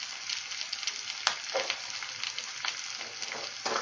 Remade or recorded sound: recorded